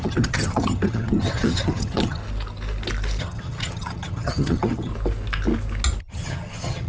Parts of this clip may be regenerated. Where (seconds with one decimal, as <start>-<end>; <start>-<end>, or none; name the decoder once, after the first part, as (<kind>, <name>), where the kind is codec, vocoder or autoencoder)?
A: 0.0-2.2 (vocoder, HiFi-GAN); 3.2-4.9; 6.0-6.9